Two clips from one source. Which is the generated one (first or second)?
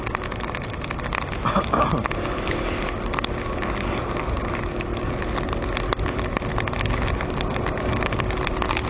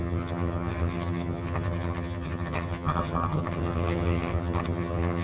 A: second